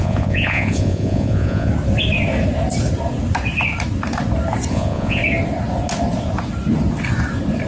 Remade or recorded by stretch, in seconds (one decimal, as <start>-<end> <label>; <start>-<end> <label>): 0.0-1.7 remade; 1.7-4.7 recorded; 4.7-5.2 remade; 5.2-7.7 recorded